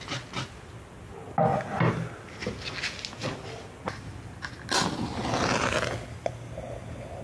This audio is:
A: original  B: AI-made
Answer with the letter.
A